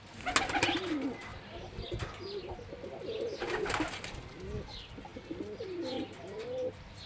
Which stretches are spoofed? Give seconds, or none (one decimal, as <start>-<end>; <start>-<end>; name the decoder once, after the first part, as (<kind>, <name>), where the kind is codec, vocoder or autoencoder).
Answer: none

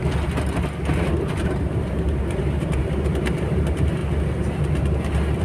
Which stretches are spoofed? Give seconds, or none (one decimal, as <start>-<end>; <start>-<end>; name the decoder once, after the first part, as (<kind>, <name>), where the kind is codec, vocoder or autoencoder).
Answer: 1.1-4.0 (vocoder, BigVGAN v2)